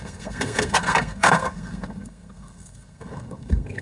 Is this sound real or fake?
fake